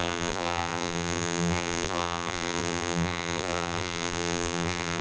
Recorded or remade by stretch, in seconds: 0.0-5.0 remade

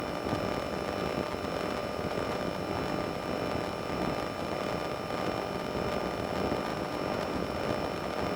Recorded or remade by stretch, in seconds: 0.0-1.8 recorded; 1.8-2.4 remade; 2.4-6.7 recorded; 6.7-7.6 remade; 7.6-8.4 recorded

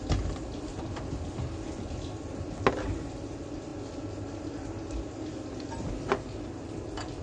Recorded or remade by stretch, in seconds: 0.0-7.2 recorded

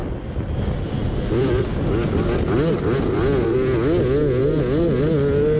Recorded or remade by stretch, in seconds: 0.0-2.2 remade; 2.2-5.6 recorded

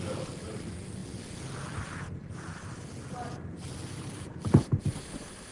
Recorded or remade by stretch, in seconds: 0.0-5.5 recorded

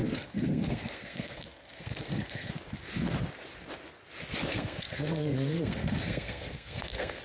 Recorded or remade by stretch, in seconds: 0.0-2.5 remade; 2.5-4.5 recorded; 4.5-7.2 remade

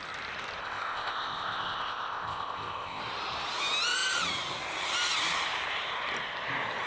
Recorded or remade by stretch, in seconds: 0.0-0.6 recorded; 0.6-3.0 remade; 3.0-6.9 recorded

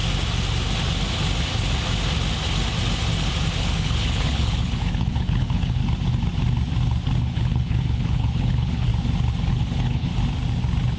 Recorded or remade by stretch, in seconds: 0.0-3.6 recorded; 3.6-5.8 remade; 5.8-7.2 recorded; 7.2-8.9 remade; 8.9-9.5 recorded; 9.5-10.1 remade; 10.1-11.0 recorded